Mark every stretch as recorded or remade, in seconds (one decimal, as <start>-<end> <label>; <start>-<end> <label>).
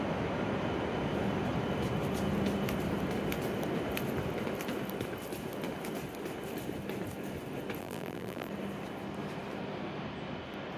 0.0-7.8 recorded; 7.8-8.5 remade; 8.5-10.8 recorded